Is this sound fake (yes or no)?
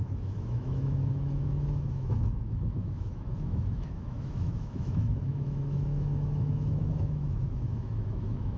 yes